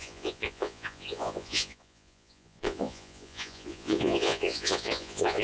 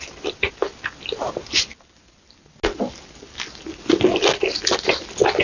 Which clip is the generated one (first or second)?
first